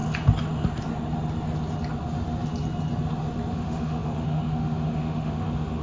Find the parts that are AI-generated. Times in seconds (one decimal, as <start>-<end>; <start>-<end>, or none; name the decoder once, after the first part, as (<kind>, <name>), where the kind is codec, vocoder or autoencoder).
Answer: 3.5-5.8 (autoencoder, DAC-VAE)